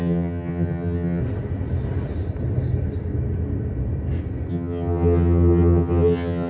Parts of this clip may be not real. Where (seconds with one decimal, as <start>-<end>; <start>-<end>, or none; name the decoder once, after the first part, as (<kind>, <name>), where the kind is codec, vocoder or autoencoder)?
0.0-1.2 (vocoder, HiFi-GAN); 4.5-6.5